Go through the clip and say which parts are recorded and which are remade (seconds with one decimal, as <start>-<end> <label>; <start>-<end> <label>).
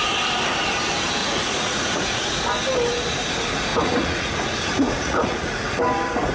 0.0-1.2 recorded; 1.2-2.4 remade; 2.4-3.7 recorded; 3.7-5.8 remade; 5.8-6.3 recorded